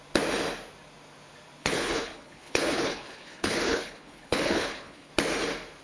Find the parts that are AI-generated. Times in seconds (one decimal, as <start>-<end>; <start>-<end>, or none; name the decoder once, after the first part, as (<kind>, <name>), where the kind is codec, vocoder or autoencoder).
1.6-5.1 (codec, HILCodec)